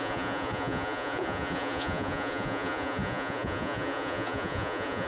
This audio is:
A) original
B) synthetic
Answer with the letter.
B